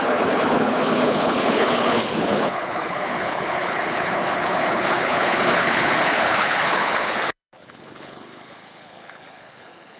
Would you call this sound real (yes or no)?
no